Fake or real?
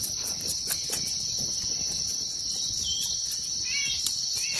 real